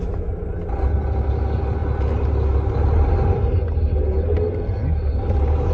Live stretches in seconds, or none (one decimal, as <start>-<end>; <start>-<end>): 0.0-5.7